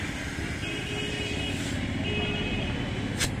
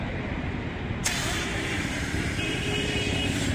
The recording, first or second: first